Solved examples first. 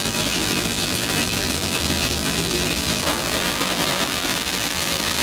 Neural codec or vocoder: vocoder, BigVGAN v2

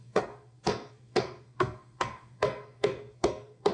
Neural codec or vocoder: codec, SNAC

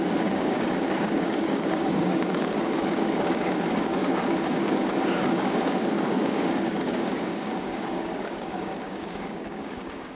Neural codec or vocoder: codec, DAC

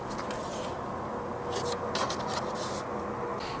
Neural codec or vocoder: none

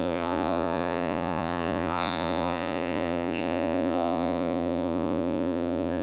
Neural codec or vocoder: vocoder, Vocos